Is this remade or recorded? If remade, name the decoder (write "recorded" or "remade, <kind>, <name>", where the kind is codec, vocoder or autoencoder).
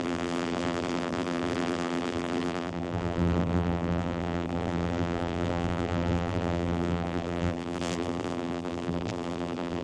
remade, vocoder, BigVGAN v2